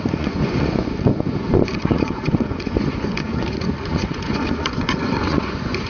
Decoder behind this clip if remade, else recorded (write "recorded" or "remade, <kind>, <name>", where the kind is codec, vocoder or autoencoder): remade, vocoder, Vocos